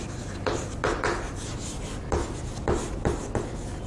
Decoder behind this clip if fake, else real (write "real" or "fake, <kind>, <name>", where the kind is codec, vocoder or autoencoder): real